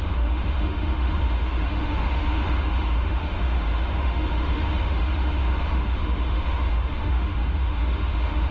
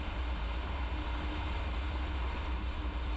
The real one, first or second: second